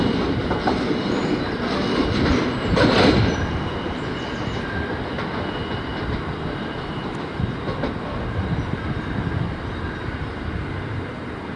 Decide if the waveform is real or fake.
real